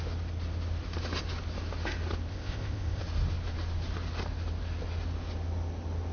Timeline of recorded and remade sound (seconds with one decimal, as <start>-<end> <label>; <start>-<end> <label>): 0.0-2.3 recorded; 2.3-3.0 remade; 3.0-6.1 recorded